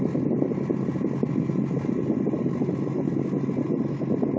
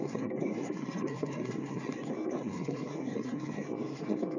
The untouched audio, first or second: first